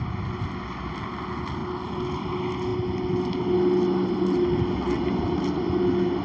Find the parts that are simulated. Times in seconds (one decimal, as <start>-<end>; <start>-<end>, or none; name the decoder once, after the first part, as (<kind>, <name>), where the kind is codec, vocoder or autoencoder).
none